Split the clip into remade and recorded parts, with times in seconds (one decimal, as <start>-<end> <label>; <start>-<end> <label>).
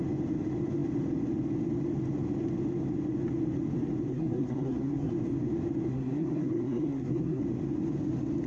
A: 0.0-4.1 recorded; 4.1-5.1 remade; 5.1-5.9 recorded; 5.9-7.4 remade; 7.4-8.5 recorded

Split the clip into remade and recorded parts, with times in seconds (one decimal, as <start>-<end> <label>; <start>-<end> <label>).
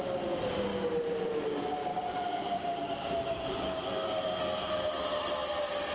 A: 0.0-1.9 recorded; 1.9-4.4 remade; 4.4-5.9 recorded